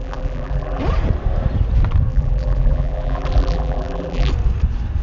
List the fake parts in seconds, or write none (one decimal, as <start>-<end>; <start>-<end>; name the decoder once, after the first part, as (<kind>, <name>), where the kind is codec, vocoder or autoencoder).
0.0-0.8 (vocoder, BigVGAN v2); 2.1-4.3